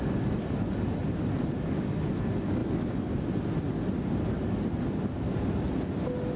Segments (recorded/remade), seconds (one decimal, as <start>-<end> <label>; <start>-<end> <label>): 0.0-6.4 recorded